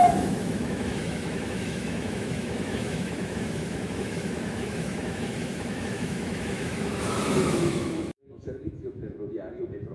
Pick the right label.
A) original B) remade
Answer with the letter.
B